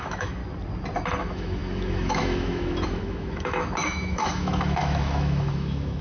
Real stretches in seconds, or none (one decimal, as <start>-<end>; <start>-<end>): 0.4-1.2